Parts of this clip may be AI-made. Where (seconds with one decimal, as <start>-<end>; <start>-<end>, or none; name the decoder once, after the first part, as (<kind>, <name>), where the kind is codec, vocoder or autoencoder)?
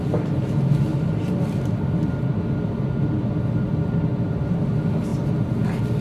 none